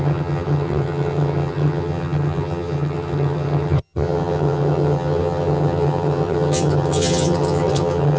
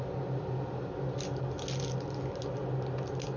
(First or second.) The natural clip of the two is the second